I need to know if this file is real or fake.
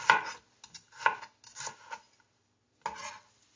real